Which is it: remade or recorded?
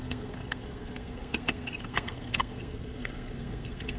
remade